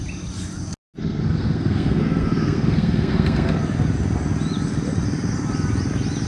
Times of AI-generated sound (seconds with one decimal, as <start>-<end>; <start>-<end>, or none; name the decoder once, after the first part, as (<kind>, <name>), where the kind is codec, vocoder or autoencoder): 1.0-3.6 (codec, SNAC)